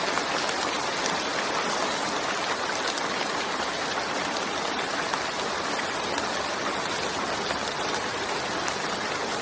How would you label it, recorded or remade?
recorded